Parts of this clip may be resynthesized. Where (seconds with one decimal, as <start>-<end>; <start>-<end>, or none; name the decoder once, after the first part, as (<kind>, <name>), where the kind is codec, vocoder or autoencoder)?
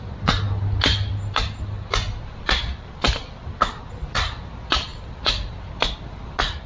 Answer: none